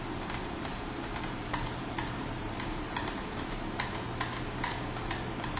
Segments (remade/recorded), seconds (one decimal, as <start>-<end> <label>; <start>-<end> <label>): 0.0-0.7 recorded; 0.7-4.1 remade; 4.1-5.6 recorded